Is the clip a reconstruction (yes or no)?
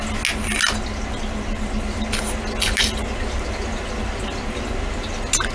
no